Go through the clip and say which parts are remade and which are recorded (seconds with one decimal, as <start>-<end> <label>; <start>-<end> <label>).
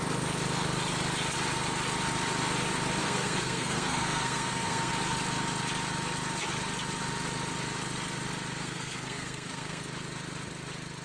0.0-3.0 recorded; 3.0-4.9 remade; 4.9-8.6 recorded; 8.6-9.8 remade; 9.8-11.0 recorded